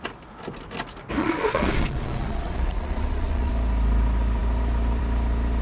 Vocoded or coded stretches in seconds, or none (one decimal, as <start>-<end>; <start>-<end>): 1.2-3.5